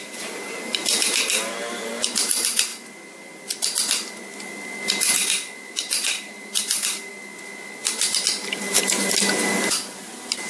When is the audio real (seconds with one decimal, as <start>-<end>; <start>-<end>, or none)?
2.7-5.7; 7.1-7.8